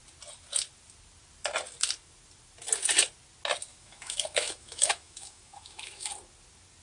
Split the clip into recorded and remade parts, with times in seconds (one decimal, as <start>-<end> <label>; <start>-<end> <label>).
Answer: 0.0-3.7 recorded; 3.7-6.1 remade; 6.1-6.8 recorded